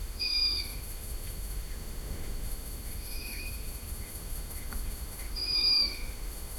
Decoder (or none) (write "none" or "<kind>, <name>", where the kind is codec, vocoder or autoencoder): autoencoder, DAC-VAE